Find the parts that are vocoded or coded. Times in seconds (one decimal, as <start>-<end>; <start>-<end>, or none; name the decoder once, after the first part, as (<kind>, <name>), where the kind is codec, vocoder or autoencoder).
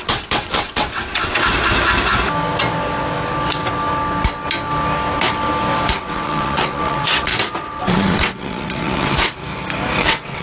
0.0-1.5 (vocoder, WaveNeXt); 6.0-7.3; 7.8-9.4; 10.0-10.4